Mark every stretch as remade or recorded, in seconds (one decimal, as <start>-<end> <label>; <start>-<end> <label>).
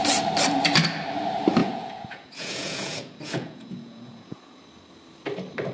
0.0-1.6 recorded; 1.6-4.6 remade; 4.6-5.7 recorded